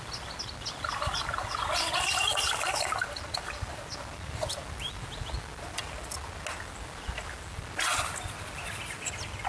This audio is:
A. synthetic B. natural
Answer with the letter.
B